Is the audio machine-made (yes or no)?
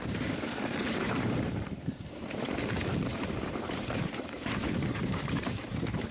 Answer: yes